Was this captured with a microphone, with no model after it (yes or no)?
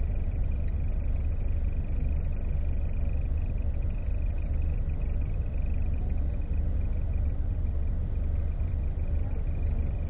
no